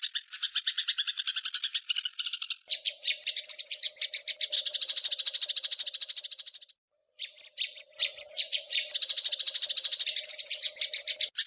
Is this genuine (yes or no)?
yes